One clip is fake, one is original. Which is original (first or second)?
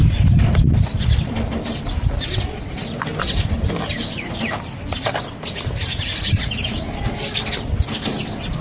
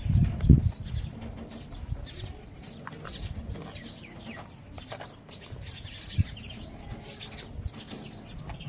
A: second